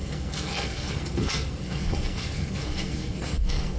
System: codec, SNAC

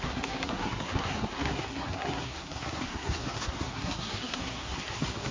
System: codec, SNAC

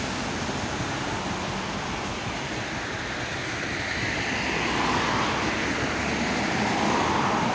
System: none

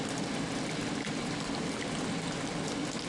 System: none